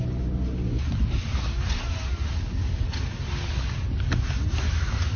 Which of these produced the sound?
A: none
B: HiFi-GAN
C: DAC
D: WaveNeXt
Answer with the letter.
A